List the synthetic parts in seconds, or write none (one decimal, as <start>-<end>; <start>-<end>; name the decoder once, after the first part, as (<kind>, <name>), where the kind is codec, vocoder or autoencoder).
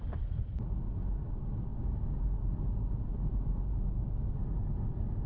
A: none